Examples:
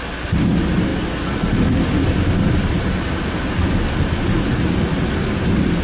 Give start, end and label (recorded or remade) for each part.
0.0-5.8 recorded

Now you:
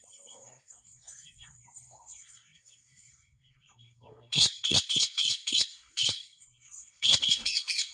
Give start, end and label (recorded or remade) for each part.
0.0-7.9 remade

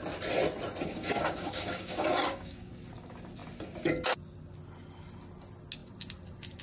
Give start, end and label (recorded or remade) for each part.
0.0-0.9 recorded; 0.9-2.7 remade; 2.7-6.6 recorded

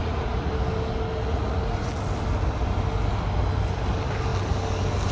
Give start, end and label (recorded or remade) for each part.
0.0-0.5 remade; 0.5-1.3 recorded; 1.3-1.9 remade; 1.9-5.1 recorded

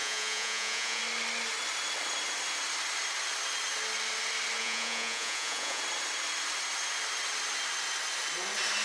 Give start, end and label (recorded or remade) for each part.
0.0-1.0 remade; 1.0-4.6 recorded; 4.6-5.8 remade; 5.8-8.8 recorded

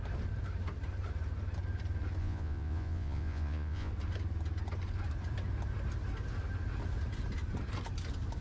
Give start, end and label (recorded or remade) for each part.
0.0-2.2 recorded; 2.2-3.9 remade; 3.9-8.4 recorded

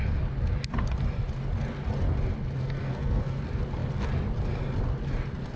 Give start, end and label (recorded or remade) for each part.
0.0-2.6 recorded; 2.6-3.4 remade; 3.4-5.6 recorded